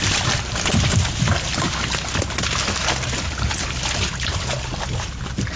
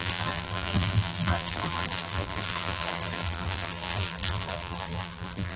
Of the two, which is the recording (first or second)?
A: first